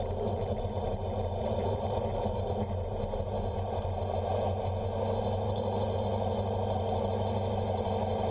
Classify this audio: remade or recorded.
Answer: recorded